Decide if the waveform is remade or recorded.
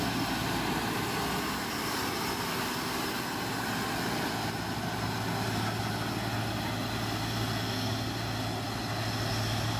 recorded